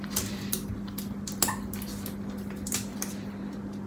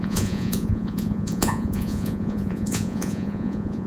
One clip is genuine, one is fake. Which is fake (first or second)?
second